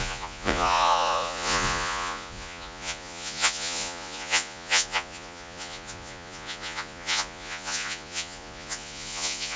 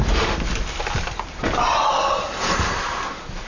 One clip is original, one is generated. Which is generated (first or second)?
first